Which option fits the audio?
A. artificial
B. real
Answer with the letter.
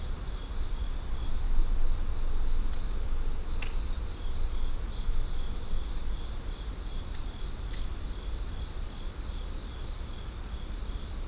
B